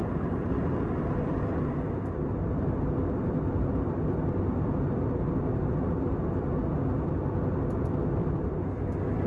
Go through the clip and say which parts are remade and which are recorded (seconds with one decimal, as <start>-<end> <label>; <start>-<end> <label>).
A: 0.0-4.0 remade; 4.0-8.2 recorded; 8.2-8.8 remade; 8.8-9.3 recorded